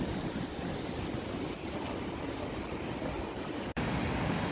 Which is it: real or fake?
real